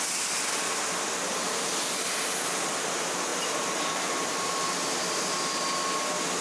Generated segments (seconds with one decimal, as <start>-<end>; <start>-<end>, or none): none